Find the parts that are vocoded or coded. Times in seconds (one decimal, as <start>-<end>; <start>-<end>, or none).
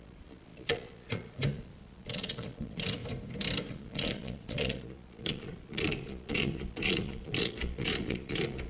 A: 0.0-3.0; 3.7-8.7